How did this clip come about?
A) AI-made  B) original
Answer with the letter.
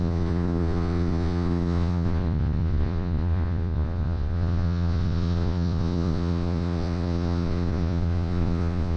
A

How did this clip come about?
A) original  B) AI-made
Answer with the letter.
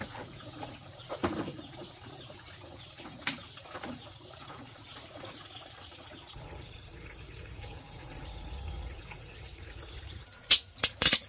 B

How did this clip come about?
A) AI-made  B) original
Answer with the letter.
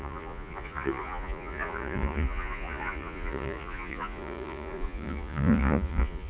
A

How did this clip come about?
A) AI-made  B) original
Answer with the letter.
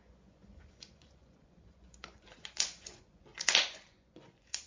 A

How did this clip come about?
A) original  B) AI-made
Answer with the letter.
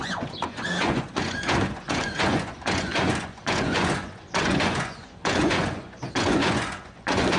B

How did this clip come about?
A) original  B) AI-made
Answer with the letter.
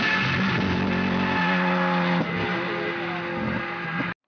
A